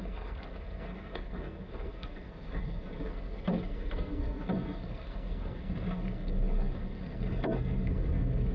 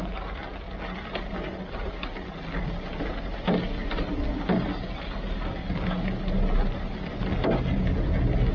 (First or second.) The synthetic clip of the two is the first